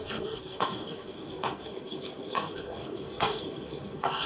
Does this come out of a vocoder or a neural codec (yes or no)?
yes